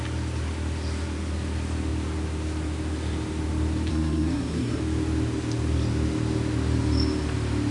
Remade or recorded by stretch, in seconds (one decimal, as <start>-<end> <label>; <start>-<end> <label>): 0.0-3.9 recorded; 3.9-4.8 remade; 4.8-7.7 recorded